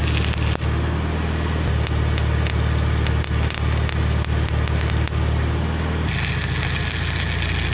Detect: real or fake real